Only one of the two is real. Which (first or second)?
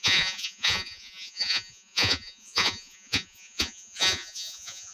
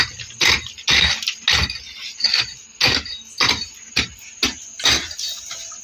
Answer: second